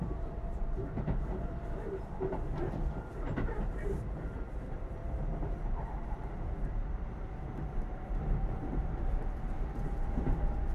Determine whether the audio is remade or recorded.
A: remade